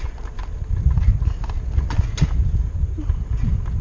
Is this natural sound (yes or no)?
yes